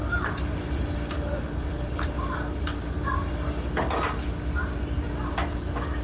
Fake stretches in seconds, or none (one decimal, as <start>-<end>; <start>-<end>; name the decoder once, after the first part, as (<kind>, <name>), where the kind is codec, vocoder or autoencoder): none